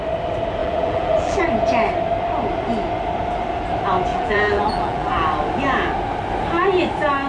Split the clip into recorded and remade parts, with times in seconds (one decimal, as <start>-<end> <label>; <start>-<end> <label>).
0.0-0.6 recorded; 0.6-1.4 remade; 1.4-4.1 recorded; 4.1-5.1 remade; 5.1-7.3 recorded